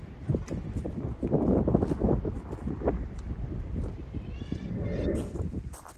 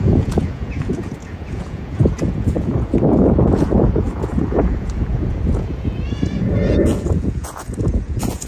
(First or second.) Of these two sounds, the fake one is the second